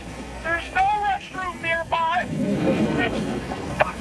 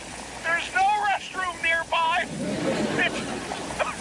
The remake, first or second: first